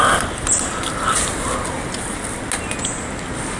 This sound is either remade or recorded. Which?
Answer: recorded